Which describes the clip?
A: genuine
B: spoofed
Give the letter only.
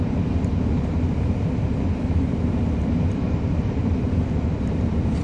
B